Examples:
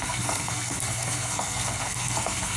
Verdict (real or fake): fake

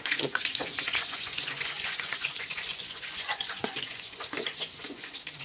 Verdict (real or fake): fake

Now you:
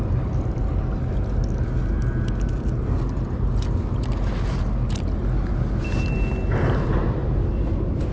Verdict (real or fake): real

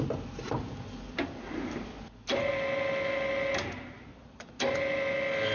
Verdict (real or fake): real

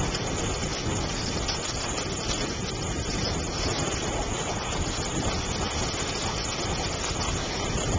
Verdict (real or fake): real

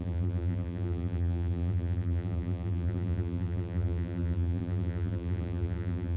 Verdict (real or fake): fake